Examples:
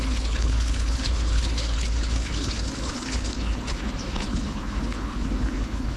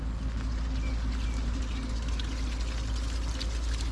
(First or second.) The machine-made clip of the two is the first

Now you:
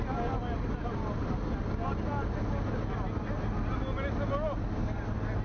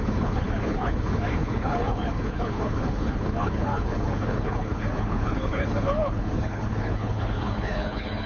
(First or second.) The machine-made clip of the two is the second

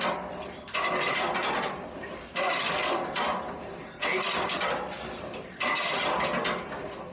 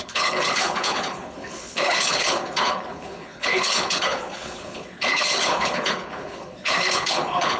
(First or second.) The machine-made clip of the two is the second